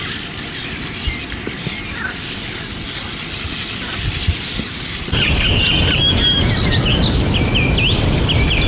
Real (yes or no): no